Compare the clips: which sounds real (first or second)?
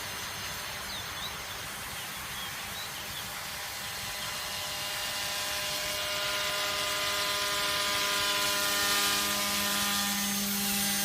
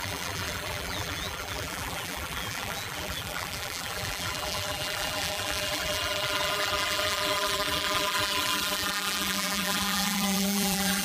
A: first